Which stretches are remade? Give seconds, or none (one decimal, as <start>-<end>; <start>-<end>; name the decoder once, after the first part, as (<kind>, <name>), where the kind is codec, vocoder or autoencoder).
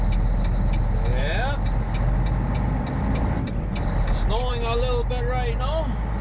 none